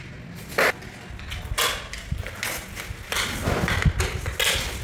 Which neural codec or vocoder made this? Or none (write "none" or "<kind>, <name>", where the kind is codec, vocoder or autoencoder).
none